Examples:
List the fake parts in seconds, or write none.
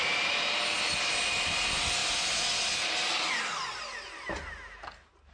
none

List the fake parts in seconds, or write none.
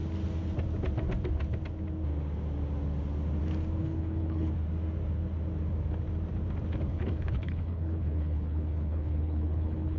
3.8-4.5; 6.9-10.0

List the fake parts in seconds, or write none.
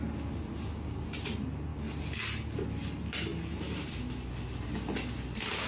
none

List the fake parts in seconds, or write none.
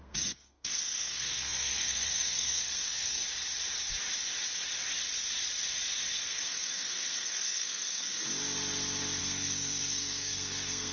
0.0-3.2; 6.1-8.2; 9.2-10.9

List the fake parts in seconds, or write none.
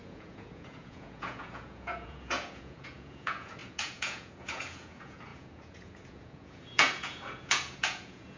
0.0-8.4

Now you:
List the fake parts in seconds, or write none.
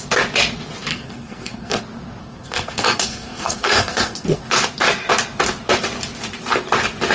0.9-1.8; 2.2-4.5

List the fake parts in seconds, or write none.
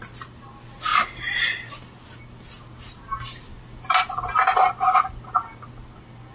none